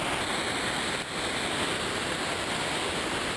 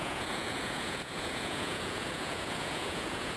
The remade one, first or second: second